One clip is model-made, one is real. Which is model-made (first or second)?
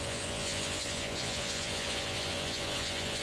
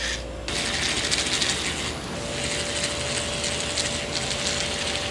first